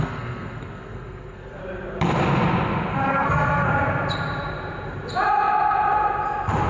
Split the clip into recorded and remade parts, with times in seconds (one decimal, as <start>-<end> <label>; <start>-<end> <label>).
0.0-1.6 remade; 1.6-3.1 recorded; 3.1-3.7 remade; 3.7-6.7 recorded